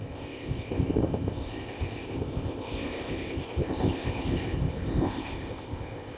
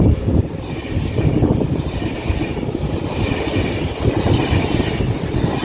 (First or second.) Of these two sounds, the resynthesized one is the first